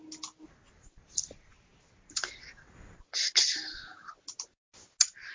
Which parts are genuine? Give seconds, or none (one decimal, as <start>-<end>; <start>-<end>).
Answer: 0.0-5.3